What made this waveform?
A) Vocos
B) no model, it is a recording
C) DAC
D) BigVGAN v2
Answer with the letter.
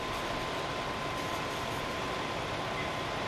B